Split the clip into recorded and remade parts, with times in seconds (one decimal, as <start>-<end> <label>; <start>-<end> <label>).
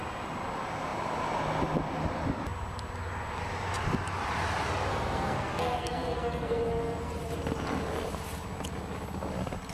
0.0-4.9 recorded; 4.9-7.2 remade; 7.2-9.7 recorded